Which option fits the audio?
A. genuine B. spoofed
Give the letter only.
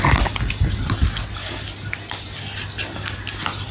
A